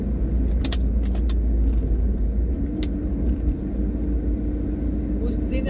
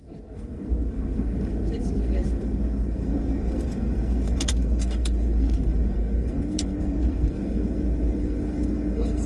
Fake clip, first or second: second